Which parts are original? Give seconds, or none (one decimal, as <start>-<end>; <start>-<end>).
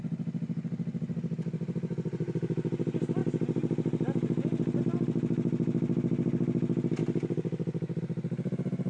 0.0-8.9